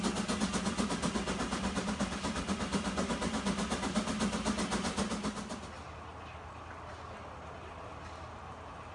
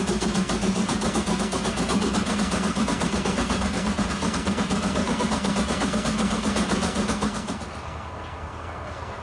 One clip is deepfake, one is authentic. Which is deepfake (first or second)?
second